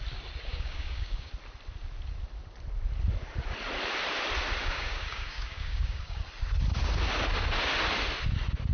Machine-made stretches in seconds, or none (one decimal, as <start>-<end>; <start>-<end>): 0.5-1.3; 4.6-6.2